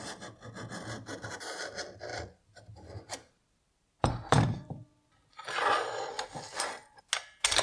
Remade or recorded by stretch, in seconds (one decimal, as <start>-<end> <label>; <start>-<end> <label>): 0.0-2.1 recorded; 2.1-6.1 remade; 6.1-7.6 recorded